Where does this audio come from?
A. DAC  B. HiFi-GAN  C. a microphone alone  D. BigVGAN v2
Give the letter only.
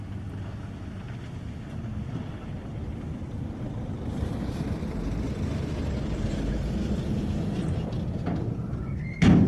C